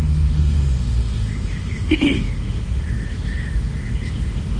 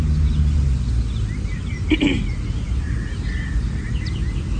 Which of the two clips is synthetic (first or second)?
first